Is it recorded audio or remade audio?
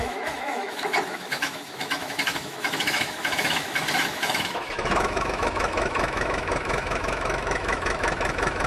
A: remade